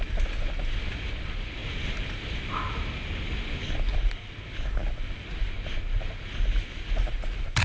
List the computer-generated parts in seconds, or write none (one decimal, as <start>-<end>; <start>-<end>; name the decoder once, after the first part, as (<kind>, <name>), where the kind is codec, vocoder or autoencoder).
none